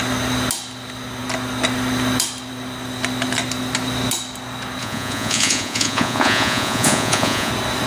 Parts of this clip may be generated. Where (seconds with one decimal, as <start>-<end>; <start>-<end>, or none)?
4.8-7.5